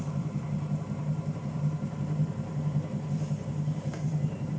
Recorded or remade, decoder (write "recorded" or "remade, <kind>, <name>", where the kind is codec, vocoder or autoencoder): remade, vocoder, BigVGAN v2